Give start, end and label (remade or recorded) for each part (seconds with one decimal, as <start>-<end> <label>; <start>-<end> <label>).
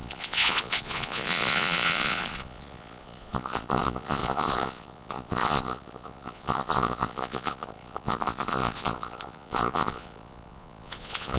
0.0-11.4 remade